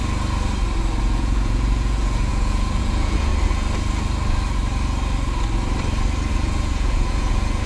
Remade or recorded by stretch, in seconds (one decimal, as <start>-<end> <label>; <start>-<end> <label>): 0.0-1.0 recorded; 1.0-3.3 remade; 3.3-6.3 recorded; 6.3-7.7 remade